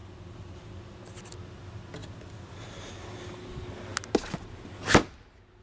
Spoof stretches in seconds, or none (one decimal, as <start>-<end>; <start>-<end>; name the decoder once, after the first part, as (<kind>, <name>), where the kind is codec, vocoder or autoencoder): none